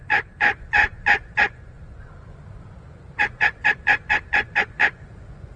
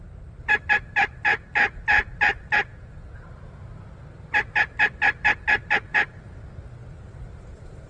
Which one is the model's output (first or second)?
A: first